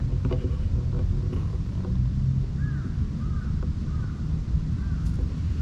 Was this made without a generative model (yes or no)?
yes